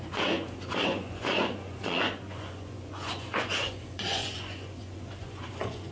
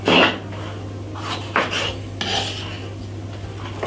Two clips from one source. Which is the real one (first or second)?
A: second